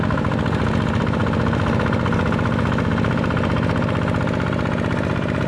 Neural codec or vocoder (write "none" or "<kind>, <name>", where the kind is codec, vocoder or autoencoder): none